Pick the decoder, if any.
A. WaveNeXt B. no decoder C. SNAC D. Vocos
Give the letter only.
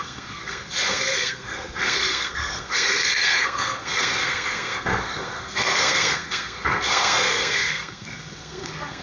C